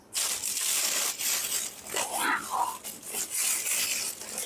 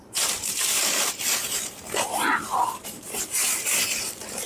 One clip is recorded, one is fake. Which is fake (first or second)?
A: second